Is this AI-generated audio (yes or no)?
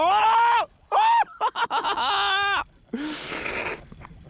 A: no